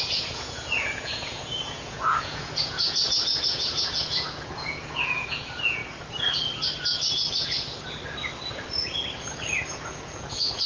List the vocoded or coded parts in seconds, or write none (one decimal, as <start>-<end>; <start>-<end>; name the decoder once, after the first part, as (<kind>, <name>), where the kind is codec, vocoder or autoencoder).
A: 0.0-5.8 (vocoder, Vocos); 9.7-10.7